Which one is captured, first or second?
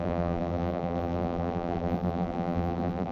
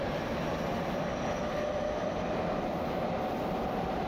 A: second